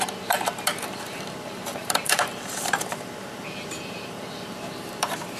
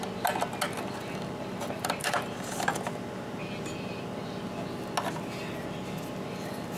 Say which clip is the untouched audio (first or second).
second